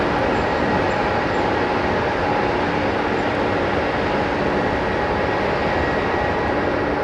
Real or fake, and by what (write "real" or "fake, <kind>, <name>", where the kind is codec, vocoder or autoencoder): real